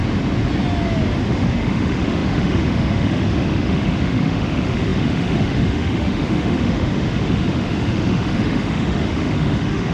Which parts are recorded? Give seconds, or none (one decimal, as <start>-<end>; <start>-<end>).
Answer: 0.0-1.3

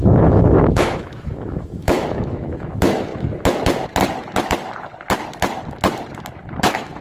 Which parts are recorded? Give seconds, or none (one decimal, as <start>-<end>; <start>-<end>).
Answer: 3.1-6.5